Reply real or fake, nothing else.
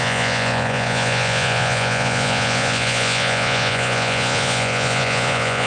fake